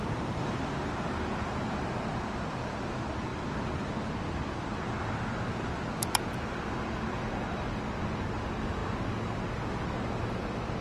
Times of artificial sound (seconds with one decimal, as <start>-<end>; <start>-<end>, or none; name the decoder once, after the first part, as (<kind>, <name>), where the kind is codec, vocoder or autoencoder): none